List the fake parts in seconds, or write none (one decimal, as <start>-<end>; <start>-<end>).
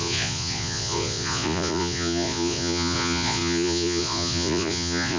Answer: 0.0-5.2